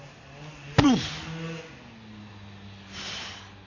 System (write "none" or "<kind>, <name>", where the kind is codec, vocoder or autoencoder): none